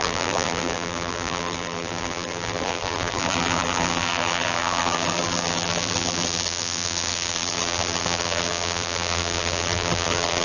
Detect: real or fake fake